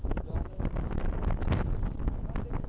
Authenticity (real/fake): real